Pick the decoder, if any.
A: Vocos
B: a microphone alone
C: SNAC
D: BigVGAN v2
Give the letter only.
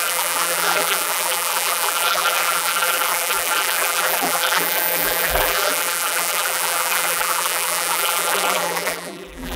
D